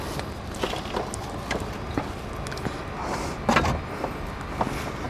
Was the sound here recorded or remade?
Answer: recorded